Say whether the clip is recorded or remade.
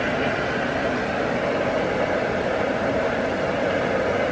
remade